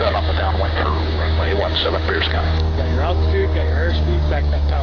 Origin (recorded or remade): remade